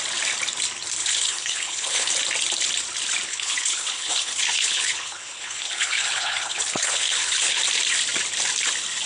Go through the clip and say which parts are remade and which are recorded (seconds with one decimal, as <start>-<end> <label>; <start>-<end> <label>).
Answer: 0.0-1.0 recorded; 1.0-2.1 remade; 2.1-3.3 recorded; 3.3-7.6 remade; 7.6-9.1 recorded